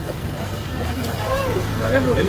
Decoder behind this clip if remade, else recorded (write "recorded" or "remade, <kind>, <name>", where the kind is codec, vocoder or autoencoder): remade, codec, SNAC